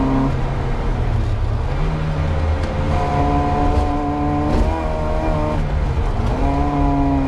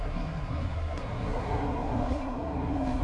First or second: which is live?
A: first